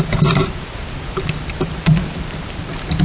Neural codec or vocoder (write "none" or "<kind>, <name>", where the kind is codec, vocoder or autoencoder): none